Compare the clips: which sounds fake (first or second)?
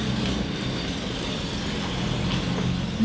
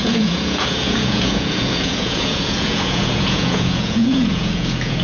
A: second